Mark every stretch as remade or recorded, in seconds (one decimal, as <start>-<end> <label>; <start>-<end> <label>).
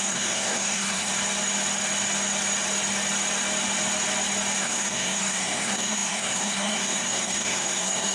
0.0-1.1 remade; 1.1-4.6 recorded; 4.6-8.1 remade